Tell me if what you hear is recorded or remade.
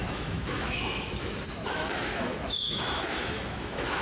remade